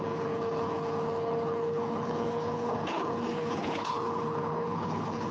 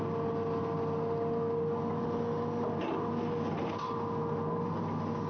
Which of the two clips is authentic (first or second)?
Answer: second